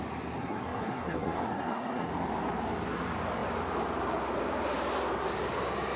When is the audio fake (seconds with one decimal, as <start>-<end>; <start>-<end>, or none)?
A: 0.4-2.1

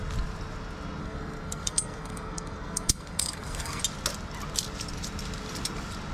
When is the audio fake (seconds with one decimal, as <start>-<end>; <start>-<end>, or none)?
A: 1.0-3.8

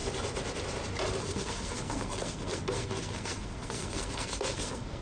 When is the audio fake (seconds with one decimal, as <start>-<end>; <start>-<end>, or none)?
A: 1.2-5.0

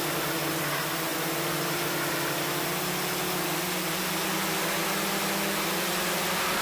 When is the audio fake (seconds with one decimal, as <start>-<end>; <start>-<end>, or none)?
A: none